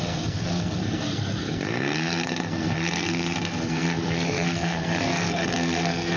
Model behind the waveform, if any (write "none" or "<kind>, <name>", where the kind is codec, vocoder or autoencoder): codec, SNAC